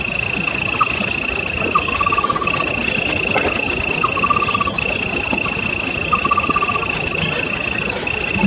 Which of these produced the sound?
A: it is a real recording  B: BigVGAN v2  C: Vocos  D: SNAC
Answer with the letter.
A